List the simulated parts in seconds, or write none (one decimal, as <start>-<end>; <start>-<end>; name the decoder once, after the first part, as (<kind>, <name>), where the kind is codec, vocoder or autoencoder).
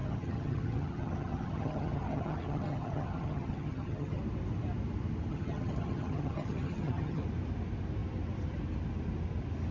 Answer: 0.0-4.2 (vocoder, HiFi-GAN); 5.3-7.2